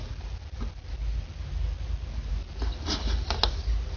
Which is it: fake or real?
real